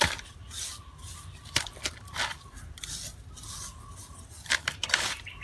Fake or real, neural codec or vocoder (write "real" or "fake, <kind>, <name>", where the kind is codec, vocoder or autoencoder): real